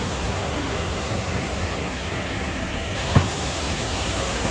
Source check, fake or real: fake